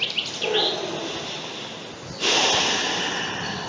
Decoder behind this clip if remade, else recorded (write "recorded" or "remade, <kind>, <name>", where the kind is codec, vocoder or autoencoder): recorded